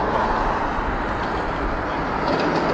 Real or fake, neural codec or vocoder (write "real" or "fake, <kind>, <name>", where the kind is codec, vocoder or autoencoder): real